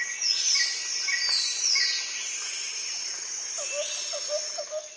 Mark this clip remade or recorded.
recorded